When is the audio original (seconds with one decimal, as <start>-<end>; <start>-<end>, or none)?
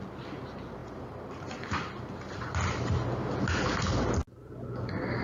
0.0-5.2